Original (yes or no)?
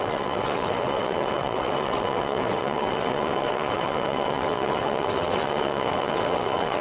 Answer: no